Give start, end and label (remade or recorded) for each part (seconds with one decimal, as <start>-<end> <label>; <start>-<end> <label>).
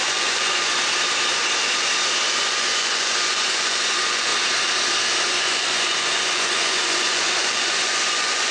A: 0.0-0.7 remade; 0.7-2.3 recorded; 2.3-4.3 remade; 4.3-5.3 recorded; 5.3-8.5 remade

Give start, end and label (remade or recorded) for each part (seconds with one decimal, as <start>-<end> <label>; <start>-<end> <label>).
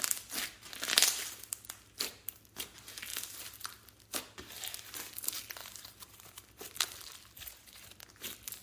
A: 0.0-8.6 recorded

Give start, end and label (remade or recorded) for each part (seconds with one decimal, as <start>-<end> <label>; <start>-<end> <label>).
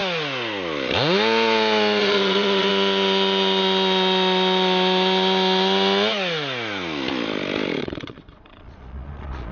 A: 0.0-2.0 recorded; 2.0-2.7 remade; 2.7-7.8 recorded; 7.8-9.5 remade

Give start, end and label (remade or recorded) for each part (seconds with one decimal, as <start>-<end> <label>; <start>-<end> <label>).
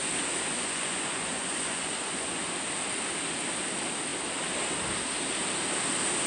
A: 0.0-0.5 recorded; 0.5-2.4 remade; 2.4-6.3 recorded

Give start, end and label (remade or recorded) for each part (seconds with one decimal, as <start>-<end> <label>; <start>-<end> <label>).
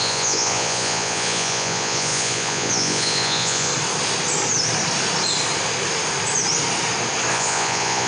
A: 0.0-3.7 remade; 3.7-7.3 recorded; 7.3-8.1 remade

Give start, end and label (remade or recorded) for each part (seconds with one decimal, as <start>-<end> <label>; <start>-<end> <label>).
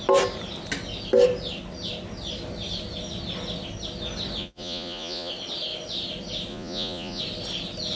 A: 0.0-4.4 recorded; 4.4-5.3 remade; 5.3-6.5 recorded; 6.5-7.2 remade; 7.2-8.0 recorded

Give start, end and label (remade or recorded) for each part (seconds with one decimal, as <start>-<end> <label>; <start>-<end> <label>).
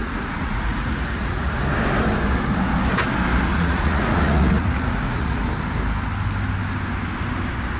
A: 0.0-1.6 remade; 1.6-3.5 recorded; 3.5-5.4 remade; 5.4-7.8 recorded